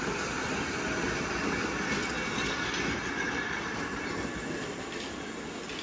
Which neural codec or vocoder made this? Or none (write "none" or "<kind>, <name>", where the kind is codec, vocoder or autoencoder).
none